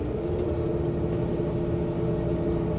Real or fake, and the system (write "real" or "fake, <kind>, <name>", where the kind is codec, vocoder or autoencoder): real